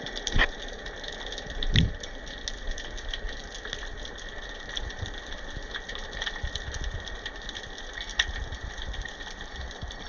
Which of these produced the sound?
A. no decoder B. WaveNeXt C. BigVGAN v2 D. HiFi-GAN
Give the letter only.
A